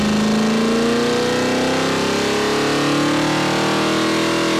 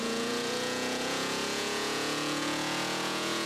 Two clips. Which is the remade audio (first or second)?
second